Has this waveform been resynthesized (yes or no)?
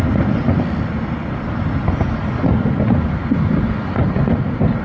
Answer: no